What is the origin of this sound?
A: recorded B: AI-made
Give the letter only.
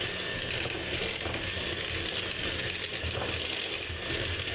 A